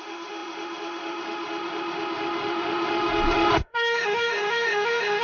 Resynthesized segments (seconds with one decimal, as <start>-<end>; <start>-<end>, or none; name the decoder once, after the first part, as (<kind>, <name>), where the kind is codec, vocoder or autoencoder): 0.0-5.2 (autoencoder, DAC-VAE)